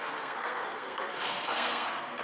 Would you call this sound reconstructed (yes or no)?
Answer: yes